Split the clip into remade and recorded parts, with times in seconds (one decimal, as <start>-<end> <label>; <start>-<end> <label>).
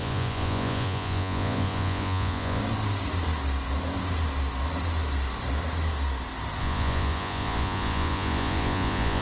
0.0-2.6 remade; 2.6-6.6 recorded; 6.6-9.2 remade